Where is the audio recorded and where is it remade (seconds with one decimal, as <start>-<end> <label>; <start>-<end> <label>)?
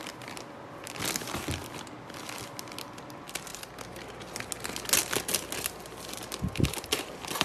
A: 0.0-7.4 recorded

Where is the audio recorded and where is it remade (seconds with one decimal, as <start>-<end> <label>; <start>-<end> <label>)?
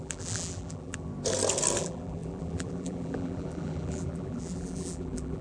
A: 0.0-1.1 remade; 1.1-1.8 recorded; 1.8-5.4 remade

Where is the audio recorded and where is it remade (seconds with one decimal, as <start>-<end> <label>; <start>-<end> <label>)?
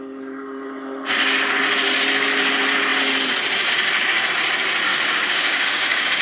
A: 0.0-4.9 recorded; 4.9-6.2 remade